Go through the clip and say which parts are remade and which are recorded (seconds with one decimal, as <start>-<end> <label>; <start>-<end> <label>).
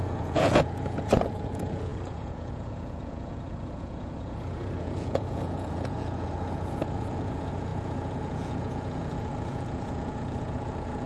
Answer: 0.0-11.1 remade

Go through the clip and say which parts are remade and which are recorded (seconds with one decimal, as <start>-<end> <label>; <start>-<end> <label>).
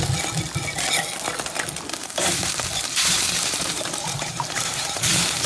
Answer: 0.0-2.0 recorded; 2.0-5.5 remade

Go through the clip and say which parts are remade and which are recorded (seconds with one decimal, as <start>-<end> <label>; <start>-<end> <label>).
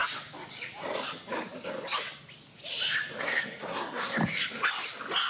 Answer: 0.0-3.2 recorded; 3.2-4.2 remade; 4.2-5.3 recorded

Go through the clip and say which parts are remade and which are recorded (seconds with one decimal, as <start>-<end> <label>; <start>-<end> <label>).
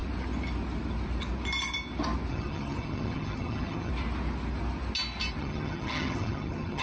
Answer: 0.0-2.3 recorded; 2.3-3.9 remade; 3.9-5.4 recorded; 5.4-6.8 remade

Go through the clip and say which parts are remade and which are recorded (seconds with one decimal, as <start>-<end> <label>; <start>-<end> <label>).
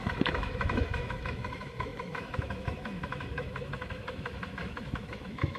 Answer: 0.0-5.6 remade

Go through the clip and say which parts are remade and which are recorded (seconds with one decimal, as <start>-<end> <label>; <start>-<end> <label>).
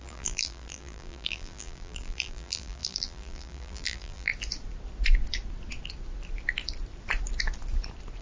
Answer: 0.0-4.3 remade; 4.3-8.2 recorded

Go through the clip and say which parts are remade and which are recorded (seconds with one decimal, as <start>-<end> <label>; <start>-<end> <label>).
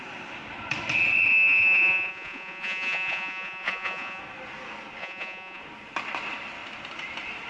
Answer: 0.0-1.3 recorded; 1.3-4.2 remade; 4.2-5.0 recorded; 5.0-5.6 remade; 5.6-7.5 recorded